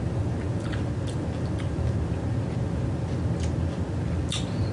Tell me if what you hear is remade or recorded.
recorded